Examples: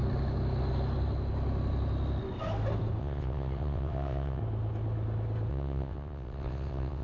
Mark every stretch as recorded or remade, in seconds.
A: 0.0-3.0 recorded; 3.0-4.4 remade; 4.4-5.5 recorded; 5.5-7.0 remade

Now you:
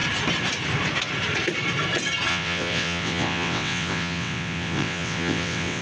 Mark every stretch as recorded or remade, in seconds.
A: 0.0-2.3 recorded; 2.3-5.8 remade

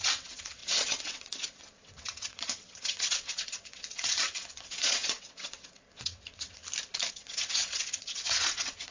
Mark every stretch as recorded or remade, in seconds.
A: 0.0-6.6 remade; 6.6-7.1 recorded; 7.1-8.9 remade

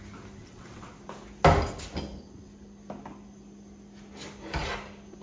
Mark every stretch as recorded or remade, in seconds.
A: 0.0-0.4 recorded; 0.4-0.9 remade; 0.9-5.2 recorded

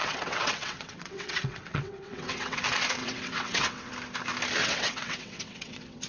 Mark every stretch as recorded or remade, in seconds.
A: 0.0-2.6 remade; 2.6-3.0 recorded; 3.0-3.9 remade; 3.9-4.6 recorded; 4.6-6.1 remade

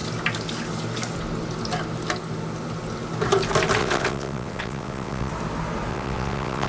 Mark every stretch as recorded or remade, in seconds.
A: 0.0-3.8 recorded; 3.8-5.3 remade; 5.3-5.9 recorded; 5.9-6.7 remade

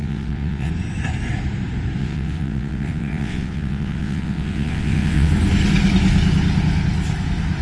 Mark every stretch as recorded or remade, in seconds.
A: 0.0-0.7 remade; 0.7-2.0 recorded; 2.0-5.3 remade; 5.3-7.6 recorded